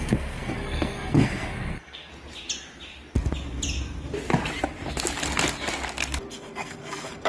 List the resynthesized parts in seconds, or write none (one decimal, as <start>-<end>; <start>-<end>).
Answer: 0.0-2.1; 6.3-7.3